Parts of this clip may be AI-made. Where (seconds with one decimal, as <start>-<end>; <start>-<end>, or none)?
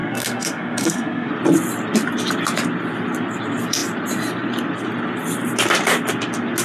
0.0-1.3